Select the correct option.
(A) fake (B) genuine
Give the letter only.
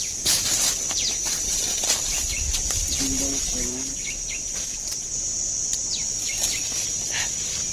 B